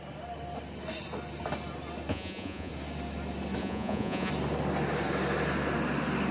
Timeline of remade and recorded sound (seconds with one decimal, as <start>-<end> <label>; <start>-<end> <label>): 0.0-2.1 recorded; 2.1-2.7 remade; 2.7-3.6 recorded; 3.6-4.3 remade; 4.3-6.3 recorded